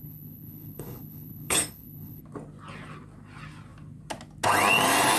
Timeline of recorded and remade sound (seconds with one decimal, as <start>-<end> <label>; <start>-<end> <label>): 0.0-2.2 remade; 2.2-5.2 recorded

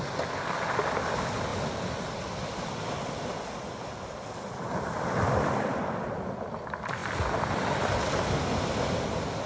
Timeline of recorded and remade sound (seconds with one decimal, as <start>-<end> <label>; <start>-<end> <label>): 0.0-9.5 recorded